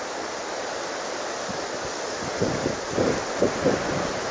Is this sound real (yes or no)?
yes